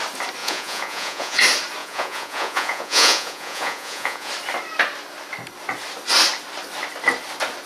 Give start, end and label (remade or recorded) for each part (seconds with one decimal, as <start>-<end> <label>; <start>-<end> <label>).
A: 0.0-0.4 recorded; 0.4-1.4 remade; 1.4-1.8 recorded; 1.8-4.3 remade; 4.3-7.7 recorded